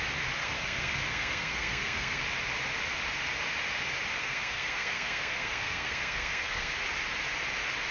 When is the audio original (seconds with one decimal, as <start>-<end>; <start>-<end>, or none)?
0.0-0.4; 2.2-4.2; 6.8-7.9